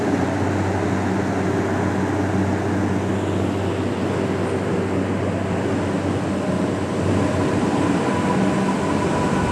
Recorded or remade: recorded